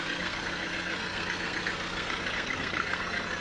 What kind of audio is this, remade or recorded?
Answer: remade